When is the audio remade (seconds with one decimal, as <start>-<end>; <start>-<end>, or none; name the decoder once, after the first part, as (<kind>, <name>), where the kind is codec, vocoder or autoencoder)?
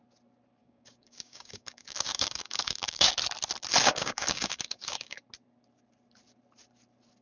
0.6-3.1 (codec, DAC); 3.8-5.2